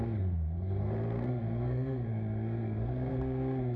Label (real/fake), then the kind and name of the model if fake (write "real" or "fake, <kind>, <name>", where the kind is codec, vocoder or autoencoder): fake, codec, SNAC